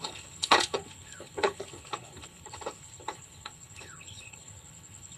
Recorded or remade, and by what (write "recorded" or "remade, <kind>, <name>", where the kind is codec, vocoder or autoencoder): remade, codec, HILCodec